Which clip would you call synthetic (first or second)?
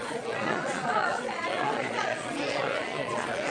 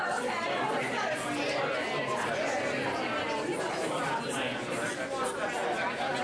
first